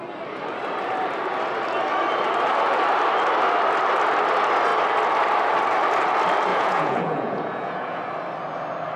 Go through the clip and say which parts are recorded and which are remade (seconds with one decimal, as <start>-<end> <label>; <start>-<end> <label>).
0.0-6.5 recorded; 6.5-8.0 remade; 8.0-9.0 recorded